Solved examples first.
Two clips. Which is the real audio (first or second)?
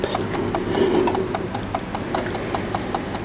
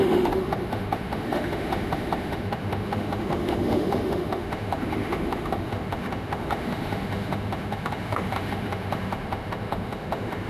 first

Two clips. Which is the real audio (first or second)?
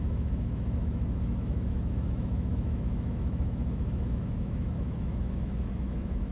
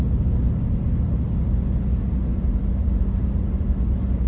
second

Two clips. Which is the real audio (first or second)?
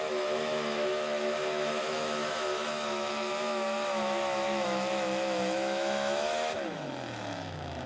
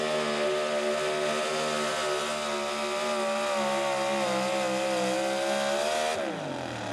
second